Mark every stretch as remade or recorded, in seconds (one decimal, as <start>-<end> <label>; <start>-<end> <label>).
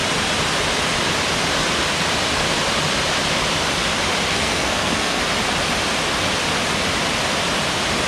0.0-4.3 recorded; 4.3-5.2 remade; 5.2-8.1 recorded